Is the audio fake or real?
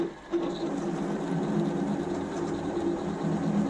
real